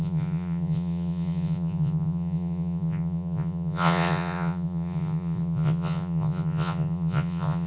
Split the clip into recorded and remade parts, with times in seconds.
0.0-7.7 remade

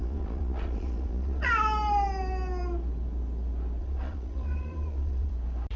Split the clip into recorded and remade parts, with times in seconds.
0.0-1.5 remade; 1.5-3.8 recorded; 3.8-5.3 remade; 5.3-5.8 recorded

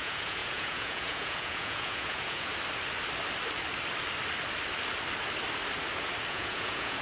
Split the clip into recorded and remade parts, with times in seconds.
0.0-2.5 remade; 2.5-6.3 recorded; 6.3-7.0 remade